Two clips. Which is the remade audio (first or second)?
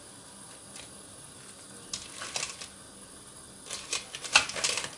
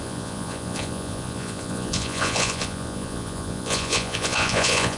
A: second